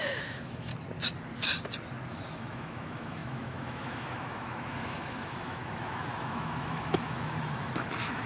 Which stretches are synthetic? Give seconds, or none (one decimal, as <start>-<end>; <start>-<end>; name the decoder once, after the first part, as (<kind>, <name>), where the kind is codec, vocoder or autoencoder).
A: 0.0-0.7 (autoencoder, DAC-VAE); 2.1-8.3